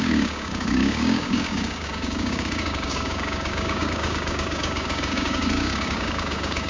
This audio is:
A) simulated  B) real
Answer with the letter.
A